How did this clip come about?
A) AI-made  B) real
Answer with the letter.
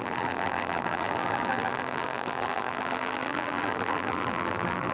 A